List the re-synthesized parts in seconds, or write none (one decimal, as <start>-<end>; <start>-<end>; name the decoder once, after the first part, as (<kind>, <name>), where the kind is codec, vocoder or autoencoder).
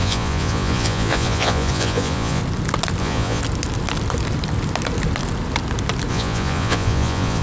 0.0-2.4 (vocoder, Vocos); 3.0-3.4; 6.1-7.4